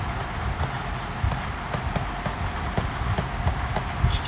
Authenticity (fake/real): real